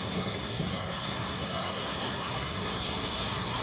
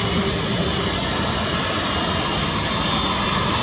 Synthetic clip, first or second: first